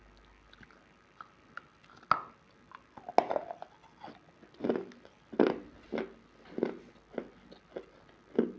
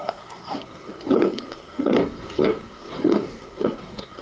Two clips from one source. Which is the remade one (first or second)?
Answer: second